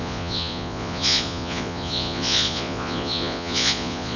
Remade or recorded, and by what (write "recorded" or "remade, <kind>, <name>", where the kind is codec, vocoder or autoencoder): remade, vocoder, Vocos